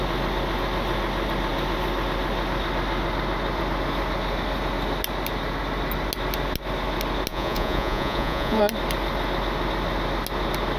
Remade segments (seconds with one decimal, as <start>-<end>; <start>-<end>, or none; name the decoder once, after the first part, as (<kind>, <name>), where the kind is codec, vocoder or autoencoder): 7.3-8.6 (vocoder, Vocos)

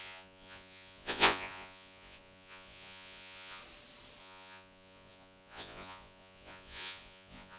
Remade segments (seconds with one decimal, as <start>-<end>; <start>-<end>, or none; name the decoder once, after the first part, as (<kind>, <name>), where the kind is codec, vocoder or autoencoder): 0.0-3.6 (vocoder, Vocos); 4.2-7.6

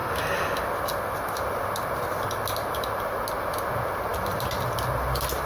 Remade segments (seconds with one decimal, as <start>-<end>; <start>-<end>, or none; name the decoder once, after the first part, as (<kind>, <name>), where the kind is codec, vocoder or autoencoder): none

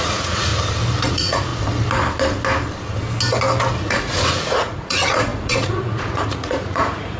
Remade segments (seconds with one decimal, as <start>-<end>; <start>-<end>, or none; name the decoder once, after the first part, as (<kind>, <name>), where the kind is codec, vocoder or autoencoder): 0.0-0.5 (vocoder, Vocos); 1.1-1.5; 3.8-7.2

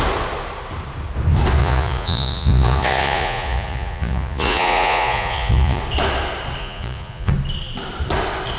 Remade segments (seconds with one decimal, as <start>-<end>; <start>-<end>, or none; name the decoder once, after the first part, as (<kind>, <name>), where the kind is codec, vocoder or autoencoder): 1.6-5.8 (vocoder, Vocos); 6.6-7.3